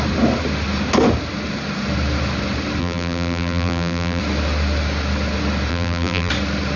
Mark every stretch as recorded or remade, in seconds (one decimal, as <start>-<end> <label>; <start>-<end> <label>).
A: 0.0-2.8 recorded; 2.8-4.2 remade; 4.2-5.7 recorded; 5.7-6.3 remade; 6.3-6.8 recorded